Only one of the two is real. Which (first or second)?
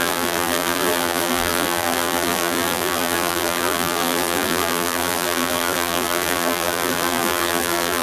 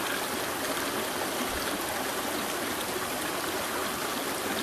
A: second